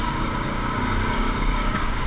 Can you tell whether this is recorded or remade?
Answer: remade